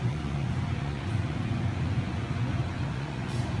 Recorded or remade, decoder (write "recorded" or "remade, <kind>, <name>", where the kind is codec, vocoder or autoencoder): remade, vocoder, Vocos